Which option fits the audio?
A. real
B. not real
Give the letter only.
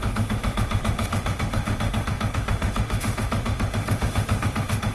B